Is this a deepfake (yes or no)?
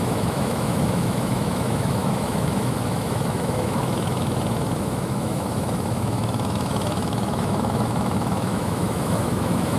yes